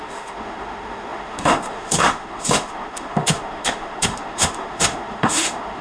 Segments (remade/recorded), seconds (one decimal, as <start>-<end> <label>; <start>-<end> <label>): 0.0-5.8 remade